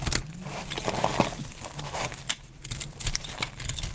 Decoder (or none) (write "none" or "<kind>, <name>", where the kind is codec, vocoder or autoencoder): none